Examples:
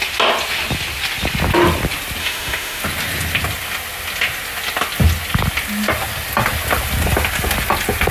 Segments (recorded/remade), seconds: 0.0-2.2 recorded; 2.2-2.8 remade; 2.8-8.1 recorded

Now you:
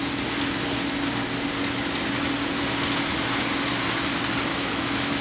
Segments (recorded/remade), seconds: 0.0-4.5 recorded; 4.5-5.2 remade

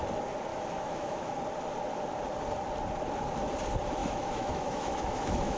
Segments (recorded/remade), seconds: 0.0-0.5 recorded; 0.5-1.4 remade; 1.4-4.0 recorded; 4.0-5.6 remade